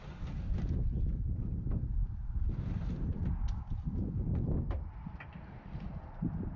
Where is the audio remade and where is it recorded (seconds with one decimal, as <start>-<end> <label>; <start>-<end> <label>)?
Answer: 0.0-1.1 recorded; 1.1-4.2 remade; 4.2-6.6 recorded